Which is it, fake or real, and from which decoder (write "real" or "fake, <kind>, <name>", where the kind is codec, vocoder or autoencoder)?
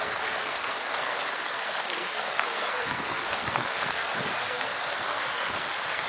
fake, codec, SNAC